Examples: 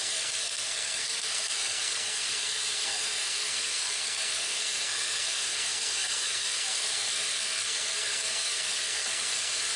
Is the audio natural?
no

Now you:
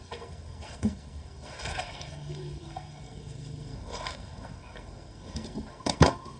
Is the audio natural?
no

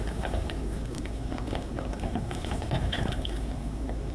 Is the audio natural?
no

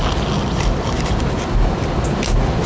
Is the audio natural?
yes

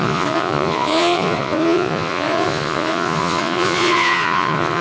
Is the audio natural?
no